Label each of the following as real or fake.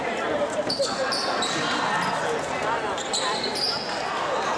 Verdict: real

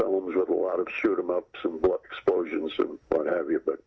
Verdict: real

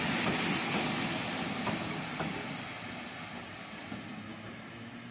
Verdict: real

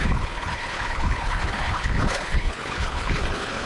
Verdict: fake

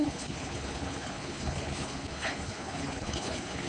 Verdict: fake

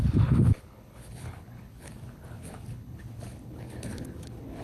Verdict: fake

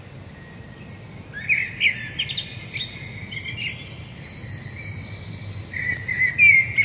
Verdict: real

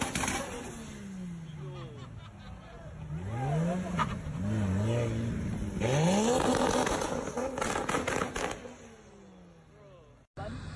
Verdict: real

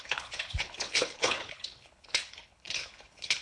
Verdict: fake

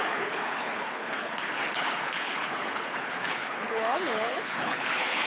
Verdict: fake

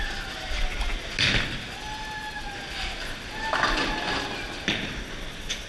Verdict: real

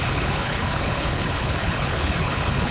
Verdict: fake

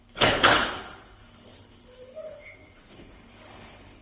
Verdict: fake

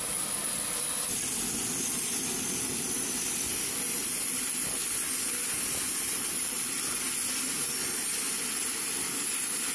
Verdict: real